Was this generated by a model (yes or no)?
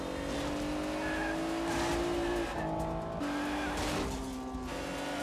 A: no